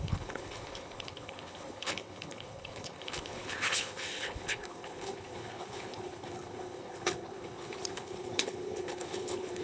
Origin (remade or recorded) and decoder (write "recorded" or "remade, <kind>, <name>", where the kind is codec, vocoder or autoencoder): remade, codec, HILCodec